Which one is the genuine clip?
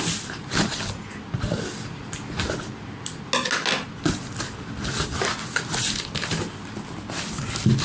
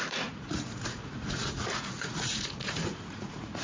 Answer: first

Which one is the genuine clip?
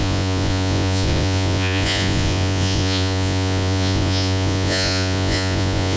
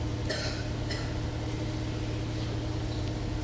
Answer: second